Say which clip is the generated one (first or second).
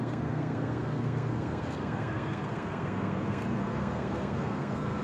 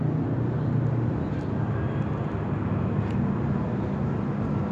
first